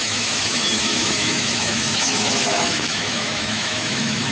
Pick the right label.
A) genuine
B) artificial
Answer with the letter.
B